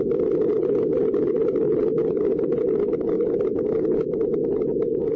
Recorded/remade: recorded